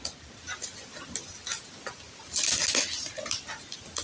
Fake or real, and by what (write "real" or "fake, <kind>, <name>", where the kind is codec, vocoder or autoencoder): real